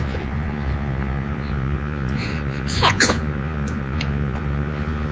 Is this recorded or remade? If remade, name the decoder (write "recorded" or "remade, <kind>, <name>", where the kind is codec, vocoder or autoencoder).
remade, vocoder, Vocos